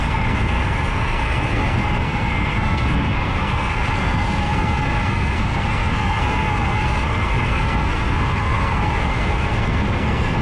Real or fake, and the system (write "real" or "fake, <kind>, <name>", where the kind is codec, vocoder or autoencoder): fake, codec, SNAC